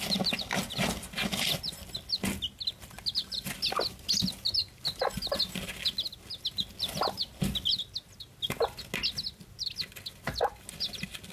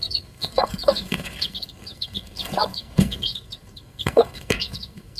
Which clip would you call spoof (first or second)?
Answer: second